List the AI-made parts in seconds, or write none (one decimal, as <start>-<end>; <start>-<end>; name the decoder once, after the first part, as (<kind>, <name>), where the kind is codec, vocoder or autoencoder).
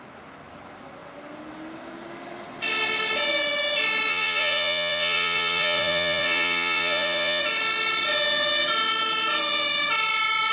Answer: 4.1-7.4 (vocoder, Vocos)